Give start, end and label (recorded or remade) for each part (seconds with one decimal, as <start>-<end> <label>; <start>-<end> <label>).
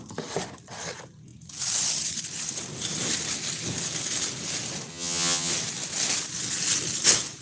0.0-4.9 recorded; 4.9-5.5 remade; 5.5-7.4 recorded